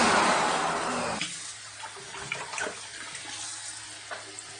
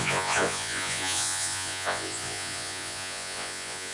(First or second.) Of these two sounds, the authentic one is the first